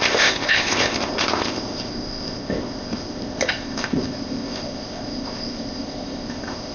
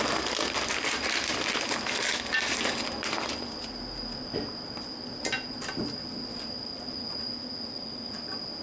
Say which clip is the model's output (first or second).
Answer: first